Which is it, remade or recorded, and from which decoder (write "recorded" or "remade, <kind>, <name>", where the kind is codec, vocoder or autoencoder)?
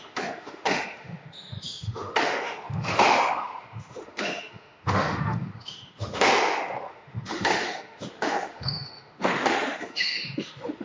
remade, autoencoder, DAC-VAE